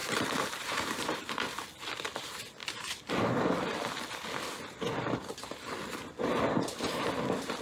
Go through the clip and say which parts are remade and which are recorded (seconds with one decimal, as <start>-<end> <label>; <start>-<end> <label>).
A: 0.0-1.3 remade; 1.3-2.6 recorded; 2.6-3.1 remade; 3.1-7.6 recorded